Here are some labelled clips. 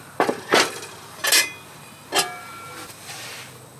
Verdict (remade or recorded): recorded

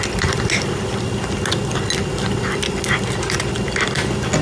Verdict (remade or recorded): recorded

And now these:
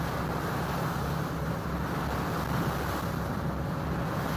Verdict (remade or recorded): recorded